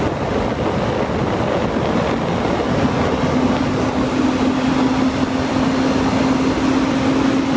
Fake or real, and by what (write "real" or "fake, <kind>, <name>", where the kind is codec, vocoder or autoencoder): real